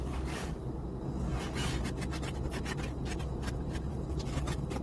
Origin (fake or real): real